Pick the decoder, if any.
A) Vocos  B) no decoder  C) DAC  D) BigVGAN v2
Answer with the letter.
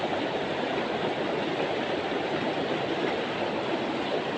B